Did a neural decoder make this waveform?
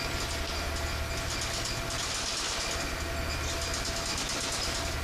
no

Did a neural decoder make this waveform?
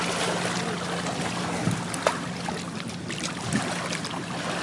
yes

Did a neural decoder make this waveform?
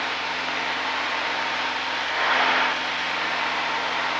no